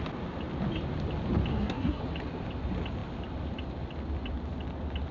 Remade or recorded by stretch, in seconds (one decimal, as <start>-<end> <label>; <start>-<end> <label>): 0.0-1.5 recorded; 1.5-2.0 remade; 2.0-5.1 recorded